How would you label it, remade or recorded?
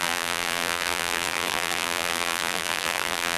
remade